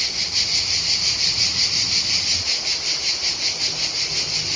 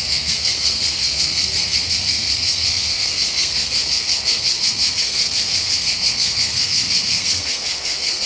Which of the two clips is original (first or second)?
first